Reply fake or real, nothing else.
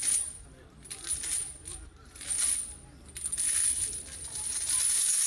real